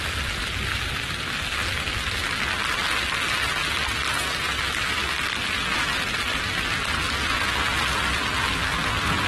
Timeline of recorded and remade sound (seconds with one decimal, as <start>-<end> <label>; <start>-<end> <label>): 0.0-9.3 recorded